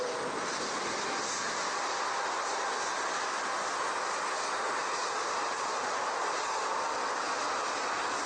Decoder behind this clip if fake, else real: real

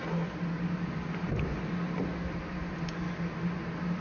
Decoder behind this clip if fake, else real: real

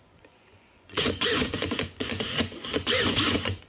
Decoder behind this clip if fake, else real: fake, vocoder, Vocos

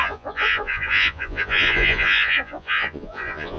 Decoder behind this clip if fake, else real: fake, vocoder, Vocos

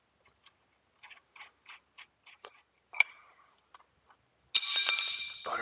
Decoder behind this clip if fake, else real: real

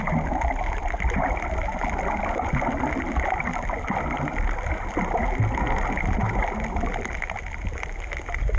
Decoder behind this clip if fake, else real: real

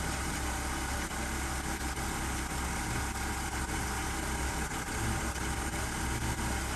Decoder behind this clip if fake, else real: real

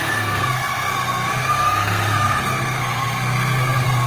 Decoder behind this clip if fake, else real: fake, codec, SNAC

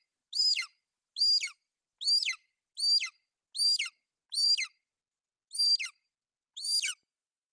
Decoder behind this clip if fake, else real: real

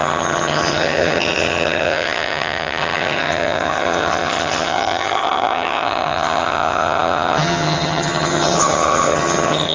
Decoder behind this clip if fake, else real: fake, vocoder, HiFi-GAN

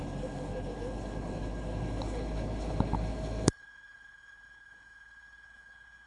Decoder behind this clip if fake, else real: fake, codec, HILCodec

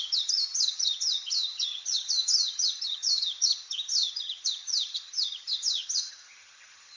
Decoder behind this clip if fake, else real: fake, vocoder, HiFi-GAN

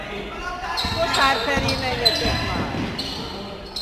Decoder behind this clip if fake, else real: real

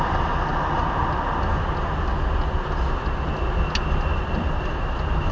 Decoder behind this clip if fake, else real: real